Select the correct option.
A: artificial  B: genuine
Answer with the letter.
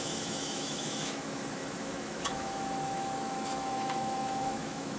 A